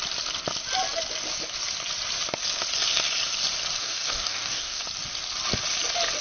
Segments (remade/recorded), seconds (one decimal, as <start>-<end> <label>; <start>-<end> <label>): 0.0-3.8 recorded; 3.8-4.8 remade; 4.8-6.2 recorded